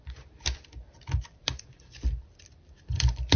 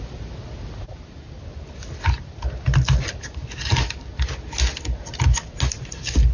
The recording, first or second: second